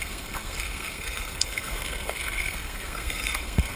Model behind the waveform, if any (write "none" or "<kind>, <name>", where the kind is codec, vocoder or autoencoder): codec, SNAC